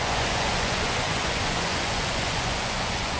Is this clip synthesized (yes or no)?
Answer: yes